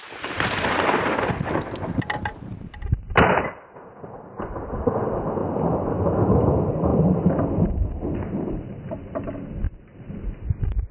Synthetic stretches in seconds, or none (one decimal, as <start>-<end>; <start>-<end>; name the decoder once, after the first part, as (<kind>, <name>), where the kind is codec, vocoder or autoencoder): none